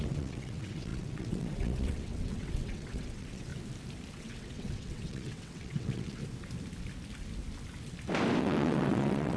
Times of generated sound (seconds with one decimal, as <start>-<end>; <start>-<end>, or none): 0.0-3.5; 4.2-6.2; 8.4-9.4